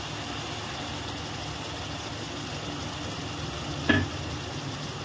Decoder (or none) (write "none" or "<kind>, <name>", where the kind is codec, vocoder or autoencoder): none